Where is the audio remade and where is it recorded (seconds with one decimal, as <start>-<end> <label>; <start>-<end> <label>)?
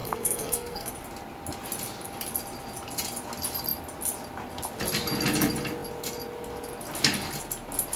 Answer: 0.0-0.9 remade; 0.9-8.0 recorded